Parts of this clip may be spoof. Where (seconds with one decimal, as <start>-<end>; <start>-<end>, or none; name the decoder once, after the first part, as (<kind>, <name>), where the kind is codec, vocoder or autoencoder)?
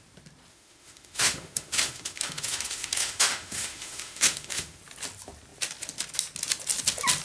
0.5-4.8 (autoencoder, DAC-VAE)